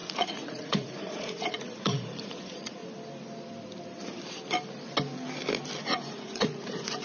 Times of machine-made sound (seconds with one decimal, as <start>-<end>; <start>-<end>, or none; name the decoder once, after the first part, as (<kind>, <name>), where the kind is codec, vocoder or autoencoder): 0.0-2.8 (vocoder, Vocos); 5.8-7.0